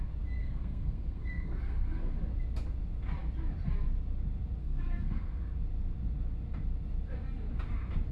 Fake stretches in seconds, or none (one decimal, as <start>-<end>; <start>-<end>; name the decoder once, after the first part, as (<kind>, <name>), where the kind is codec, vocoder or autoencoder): 0.4-2.1 (codec, SNAC); 4.6-5.4